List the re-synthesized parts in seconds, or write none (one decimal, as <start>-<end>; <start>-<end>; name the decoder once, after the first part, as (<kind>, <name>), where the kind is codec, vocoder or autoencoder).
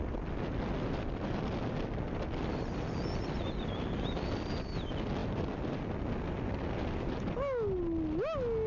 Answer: none